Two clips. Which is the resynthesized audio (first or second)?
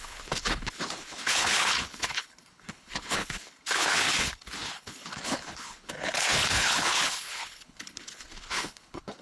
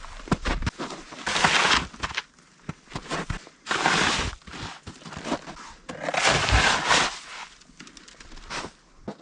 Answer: first